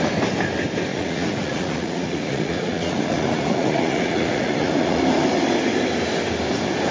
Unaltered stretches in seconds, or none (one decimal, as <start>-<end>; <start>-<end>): 0.0-0.9; 5.0-6.9